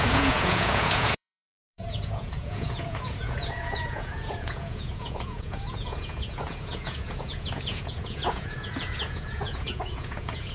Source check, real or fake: fake